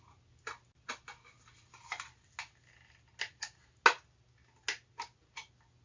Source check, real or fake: real